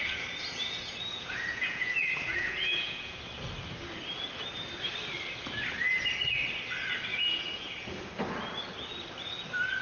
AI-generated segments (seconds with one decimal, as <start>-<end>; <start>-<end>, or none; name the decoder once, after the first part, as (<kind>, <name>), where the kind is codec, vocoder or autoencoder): 1.1-3.2 (vocoder, Vocos); 7.1-7.9